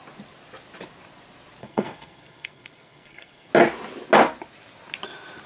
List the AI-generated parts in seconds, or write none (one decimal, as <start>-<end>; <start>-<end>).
1.6-3.5